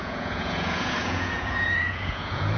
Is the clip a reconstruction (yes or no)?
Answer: yes